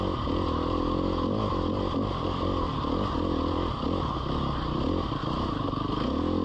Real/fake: real